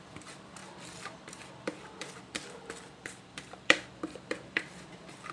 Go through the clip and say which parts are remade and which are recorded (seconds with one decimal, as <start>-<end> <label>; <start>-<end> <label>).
0.0-5.3 remade